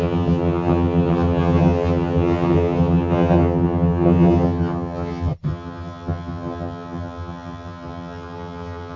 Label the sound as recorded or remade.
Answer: remade